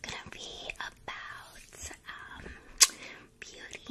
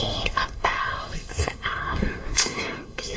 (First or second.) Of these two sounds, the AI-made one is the second